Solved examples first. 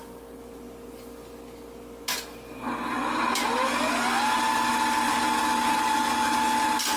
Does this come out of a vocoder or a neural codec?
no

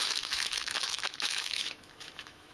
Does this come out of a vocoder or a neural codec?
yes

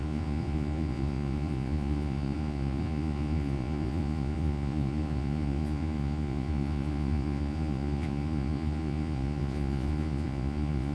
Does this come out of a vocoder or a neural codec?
yes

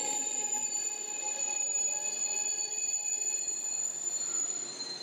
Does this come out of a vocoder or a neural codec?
yes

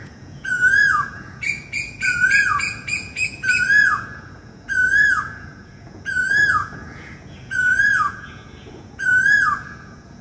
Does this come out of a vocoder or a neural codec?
yes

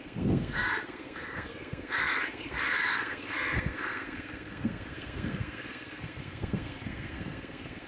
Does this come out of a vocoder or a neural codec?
yes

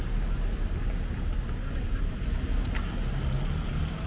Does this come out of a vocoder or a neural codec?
no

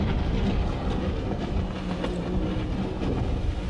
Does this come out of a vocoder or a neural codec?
no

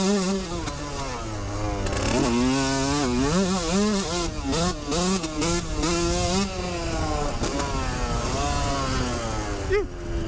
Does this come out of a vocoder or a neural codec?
no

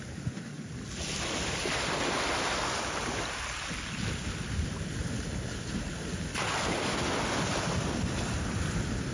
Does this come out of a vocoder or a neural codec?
no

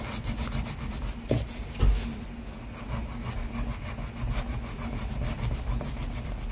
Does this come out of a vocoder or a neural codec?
no